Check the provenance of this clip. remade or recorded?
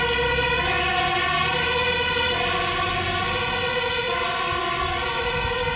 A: recorded